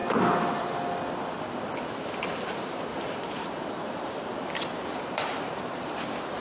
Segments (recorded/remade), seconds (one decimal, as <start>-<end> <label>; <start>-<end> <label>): 0.0-2.9 recorded; 2.9-5.9 remade; 5.9-6.4 recorded